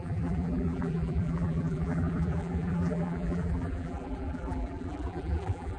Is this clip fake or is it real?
fake